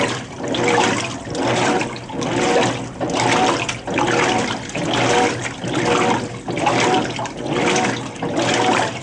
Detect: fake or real real